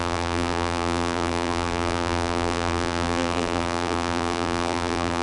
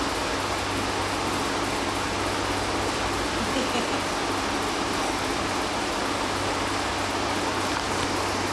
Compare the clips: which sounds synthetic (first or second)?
first